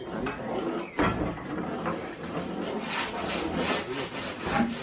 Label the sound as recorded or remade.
recorded